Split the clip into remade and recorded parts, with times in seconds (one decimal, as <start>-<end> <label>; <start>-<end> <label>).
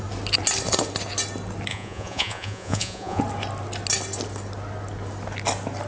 0.0-1.7 recorded; 1.7-3.2 remade; 3.2-5.9 recorded